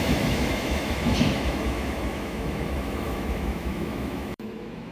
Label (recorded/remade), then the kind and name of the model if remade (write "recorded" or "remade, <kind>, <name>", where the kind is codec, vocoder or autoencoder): remade, autoencoder, DAC-VAE